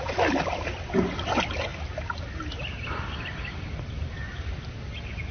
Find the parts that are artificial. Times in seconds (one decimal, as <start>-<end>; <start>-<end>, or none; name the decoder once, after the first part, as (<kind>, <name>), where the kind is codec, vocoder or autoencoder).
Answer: none